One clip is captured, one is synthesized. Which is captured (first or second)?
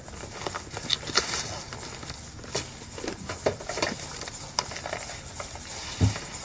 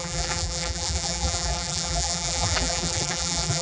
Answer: first